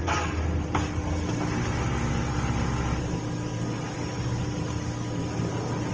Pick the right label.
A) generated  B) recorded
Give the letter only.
B